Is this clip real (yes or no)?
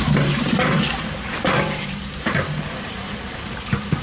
no